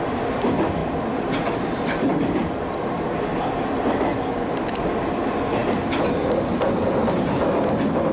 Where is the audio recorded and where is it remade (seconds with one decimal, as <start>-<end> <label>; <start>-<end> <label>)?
0.0-0.8 recorded; 0.8-3.4 remade; 3.4-4.1 recorded; 4.1-5.0 remade; 5.0-8.1 recorded